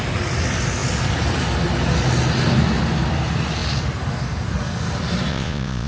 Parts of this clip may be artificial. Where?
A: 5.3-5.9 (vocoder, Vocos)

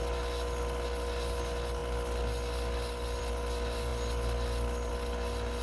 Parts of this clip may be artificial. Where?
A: none